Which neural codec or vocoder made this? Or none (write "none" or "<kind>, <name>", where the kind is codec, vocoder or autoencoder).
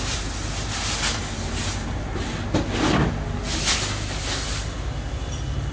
none